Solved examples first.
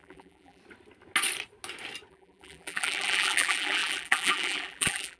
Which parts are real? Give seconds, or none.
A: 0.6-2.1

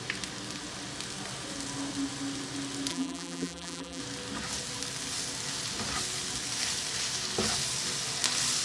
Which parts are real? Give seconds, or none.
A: 0.0-2.9; 4.0-8.6

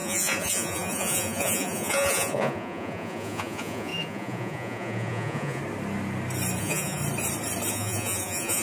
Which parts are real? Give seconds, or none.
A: 5.6-6.6; 7.0-7.7

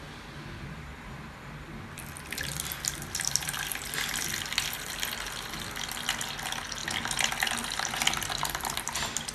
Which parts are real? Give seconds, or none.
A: 0.0-9.3

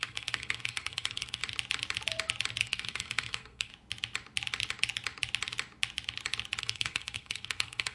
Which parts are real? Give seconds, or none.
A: 1.4-2.6; 3.7-6.6

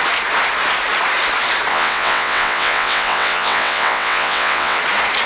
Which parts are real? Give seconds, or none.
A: 0.0-1.7; 4.8-5.3

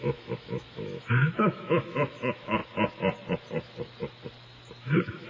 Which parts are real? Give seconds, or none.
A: 2.6-4.8